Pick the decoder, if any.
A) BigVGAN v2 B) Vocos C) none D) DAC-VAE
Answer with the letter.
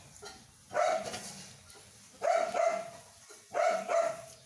C